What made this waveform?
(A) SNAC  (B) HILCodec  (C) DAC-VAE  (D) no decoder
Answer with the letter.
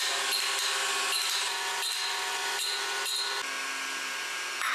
D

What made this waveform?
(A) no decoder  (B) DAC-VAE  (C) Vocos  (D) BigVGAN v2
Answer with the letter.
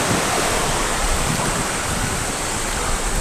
A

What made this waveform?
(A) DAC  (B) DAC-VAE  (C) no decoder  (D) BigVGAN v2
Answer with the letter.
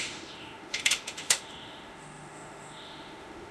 B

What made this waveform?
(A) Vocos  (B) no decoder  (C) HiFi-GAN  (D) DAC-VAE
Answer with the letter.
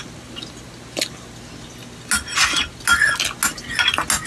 B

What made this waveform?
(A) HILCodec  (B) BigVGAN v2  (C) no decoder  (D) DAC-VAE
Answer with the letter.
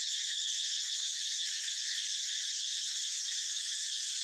D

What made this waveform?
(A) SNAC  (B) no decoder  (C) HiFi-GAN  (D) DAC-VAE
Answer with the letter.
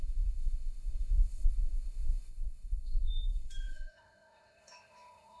D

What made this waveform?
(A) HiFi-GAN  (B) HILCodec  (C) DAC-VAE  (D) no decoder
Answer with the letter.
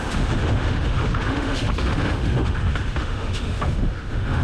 C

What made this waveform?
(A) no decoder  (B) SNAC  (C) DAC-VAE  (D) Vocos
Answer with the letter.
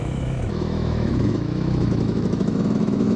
C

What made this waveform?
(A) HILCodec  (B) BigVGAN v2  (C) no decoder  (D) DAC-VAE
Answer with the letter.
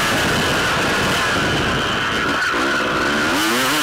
C